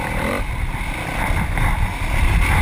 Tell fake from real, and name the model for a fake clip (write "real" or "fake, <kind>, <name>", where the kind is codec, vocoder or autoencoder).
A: fake, vocoder, BigVGAN v2